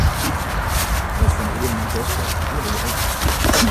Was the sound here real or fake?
fake